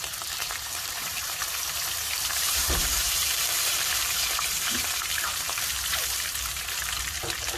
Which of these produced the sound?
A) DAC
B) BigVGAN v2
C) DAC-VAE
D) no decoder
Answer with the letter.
B